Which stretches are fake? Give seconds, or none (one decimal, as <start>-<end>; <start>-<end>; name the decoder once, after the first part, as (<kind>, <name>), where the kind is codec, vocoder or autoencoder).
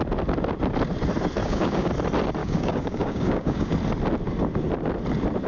1.4-1.9 (codec, DAC); 2.4-3.7